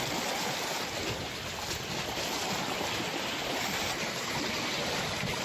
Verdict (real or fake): real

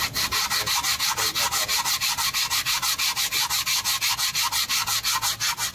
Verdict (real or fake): real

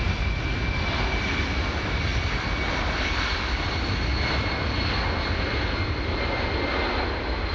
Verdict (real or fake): real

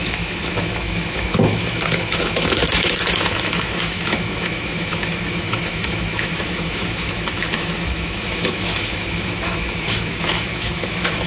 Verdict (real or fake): fake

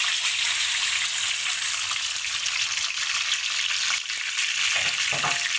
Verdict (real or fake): real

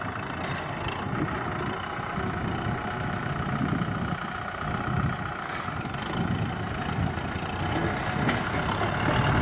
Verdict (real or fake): real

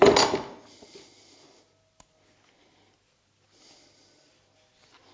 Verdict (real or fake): real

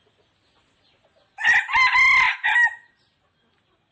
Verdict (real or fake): real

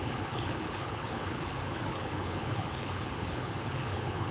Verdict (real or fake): fake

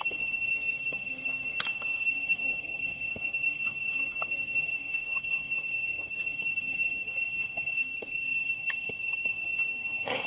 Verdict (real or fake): fake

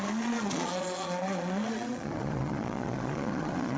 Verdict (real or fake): fake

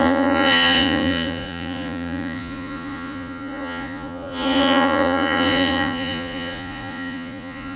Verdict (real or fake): fake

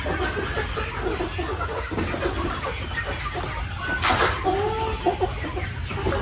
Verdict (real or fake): real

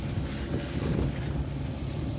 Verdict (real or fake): real